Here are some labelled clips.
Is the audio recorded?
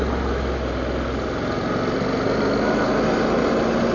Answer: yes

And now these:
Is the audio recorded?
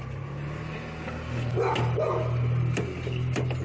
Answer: yes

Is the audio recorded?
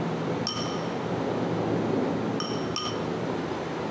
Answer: yes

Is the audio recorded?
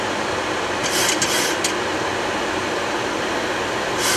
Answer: yes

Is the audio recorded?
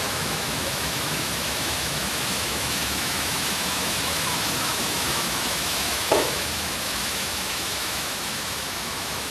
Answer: no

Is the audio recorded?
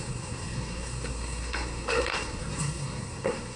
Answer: no